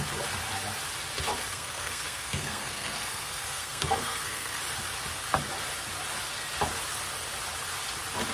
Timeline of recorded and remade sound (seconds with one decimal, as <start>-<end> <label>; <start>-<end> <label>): 0.0-1.5 recorded; 1.5-4.6 remade; 4.6-8.3 recorded